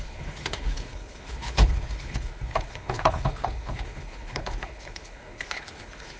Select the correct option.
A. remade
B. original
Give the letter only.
A